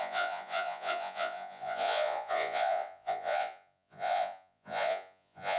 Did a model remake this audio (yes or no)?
yes